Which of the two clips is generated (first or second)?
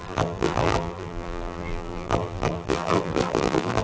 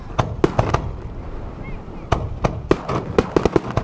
first